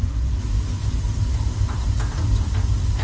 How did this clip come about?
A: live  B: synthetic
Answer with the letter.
A